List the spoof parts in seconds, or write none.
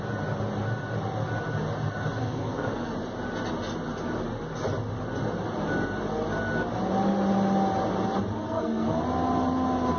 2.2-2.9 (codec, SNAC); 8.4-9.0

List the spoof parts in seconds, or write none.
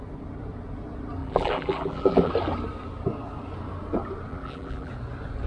1.2-2.3 (vocoder, BigVGAN v2); 4.3-4.9